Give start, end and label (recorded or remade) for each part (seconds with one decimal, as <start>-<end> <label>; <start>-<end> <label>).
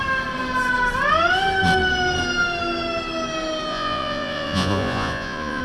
0.0-3.7 recorded; 3.7-5.6 remade